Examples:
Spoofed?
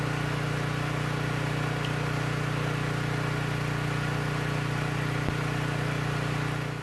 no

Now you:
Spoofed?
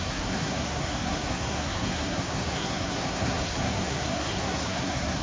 yes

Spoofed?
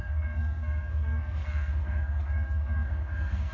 yes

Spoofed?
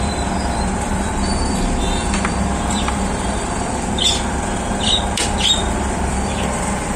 yes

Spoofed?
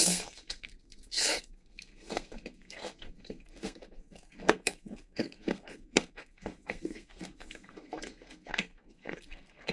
yes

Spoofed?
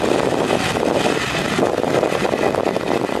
no